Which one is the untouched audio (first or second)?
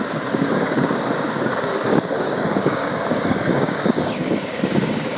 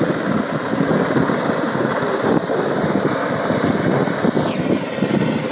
second